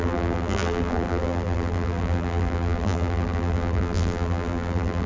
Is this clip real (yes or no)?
no